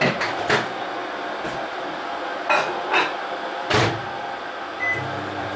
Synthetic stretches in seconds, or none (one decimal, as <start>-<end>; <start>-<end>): none